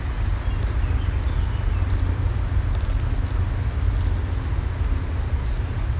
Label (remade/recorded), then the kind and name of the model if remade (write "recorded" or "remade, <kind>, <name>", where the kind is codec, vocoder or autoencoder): recorded